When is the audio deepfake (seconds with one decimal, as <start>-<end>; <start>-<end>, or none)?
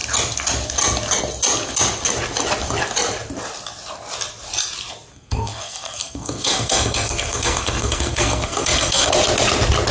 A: 5.1-9.1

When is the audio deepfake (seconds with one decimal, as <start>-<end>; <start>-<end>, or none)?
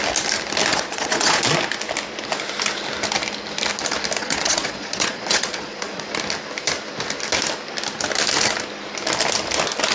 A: 0.7-1.4; 4.2-6.1